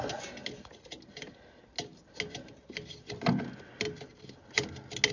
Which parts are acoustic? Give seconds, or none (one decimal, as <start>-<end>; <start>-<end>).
0.0-5.1